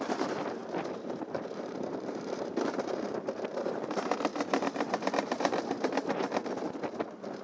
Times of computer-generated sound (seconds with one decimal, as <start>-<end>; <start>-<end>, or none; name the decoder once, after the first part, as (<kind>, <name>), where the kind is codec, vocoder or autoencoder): 0.0-6.4 (vocoder, BigVGAN v2)